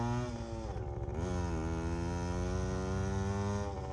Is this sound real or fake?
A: real